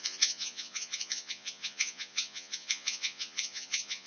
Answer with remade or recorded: remade